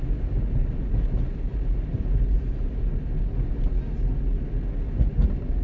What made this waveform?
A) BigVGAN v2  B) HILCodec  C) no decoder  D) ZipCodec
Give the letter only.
C